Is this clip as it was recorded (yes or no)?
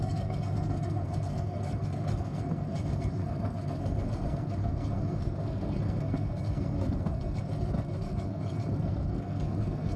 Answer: no